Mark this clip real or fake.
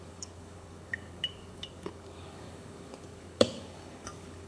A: fake